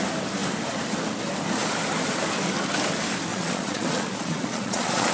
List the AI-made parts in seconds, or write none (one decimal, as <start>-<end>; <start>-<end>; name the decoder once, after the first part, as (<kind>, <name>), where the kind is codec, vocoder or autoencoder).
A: 3.3-5.1 (vocoder, Vocos)